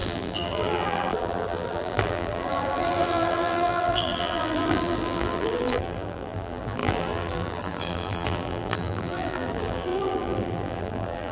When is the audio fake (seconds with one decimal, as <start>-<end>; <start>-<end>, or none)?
0.0-11.3